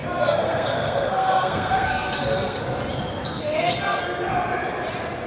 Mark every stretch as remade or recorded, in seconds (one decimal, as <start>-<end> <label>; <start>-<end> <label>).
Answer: 0.0-2.6 remade; 2.6-3.3 recorded; 3.3-4.0 remade; 4.0-5.3 recorded